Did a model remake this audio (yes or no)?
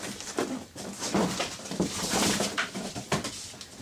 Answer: yes